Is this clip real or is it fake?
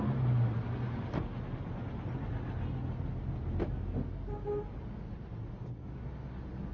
real